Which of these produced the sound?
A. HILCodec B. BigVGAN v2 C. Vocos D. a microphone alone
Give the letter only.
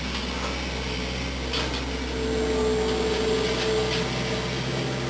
D